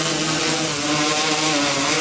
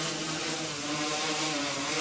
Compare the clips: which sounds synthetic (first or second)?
second